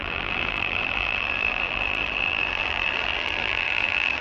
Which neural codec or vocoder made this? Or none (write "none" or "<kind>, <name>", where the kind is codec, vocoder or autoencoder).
vocoder, BigVGAN v2